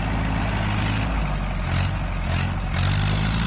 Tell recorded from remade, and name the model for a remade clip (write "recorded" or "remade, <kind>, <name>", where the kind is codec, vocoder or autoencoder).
recorded